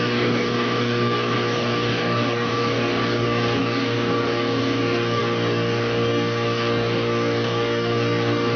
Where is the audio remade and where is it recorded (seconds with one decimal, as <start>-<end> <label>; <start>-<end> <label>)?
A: 0.0-8.6 remade